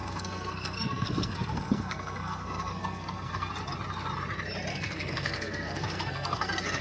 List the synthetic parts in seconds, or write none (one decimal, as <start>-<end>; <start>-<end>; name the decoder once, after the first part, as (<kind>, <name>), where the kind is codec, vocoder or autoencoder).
0.0-3.5 (codec, SNAC); 4.7-6.8